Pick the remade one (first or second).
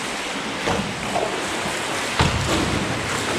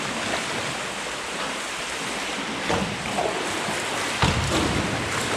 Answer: second